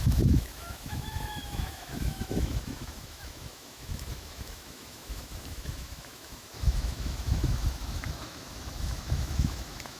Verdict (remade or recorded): remade